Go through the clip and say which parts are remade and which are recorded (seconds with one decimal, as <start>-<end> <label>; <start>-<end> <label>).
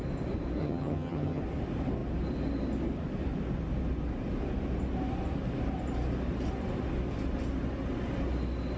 0.0-0.6 recorded; 0.6-1.4 remade; 1.4-8.8 recorded